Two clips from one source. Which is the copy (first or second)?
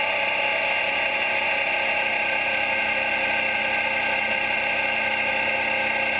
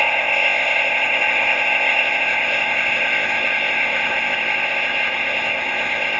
second